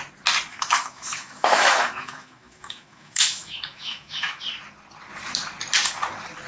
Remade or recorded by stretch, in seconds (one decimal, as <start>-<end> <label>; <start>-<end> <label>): 0.0-0.5 recorded; 0.5-4.4 remade; 4.4-6.5 recorded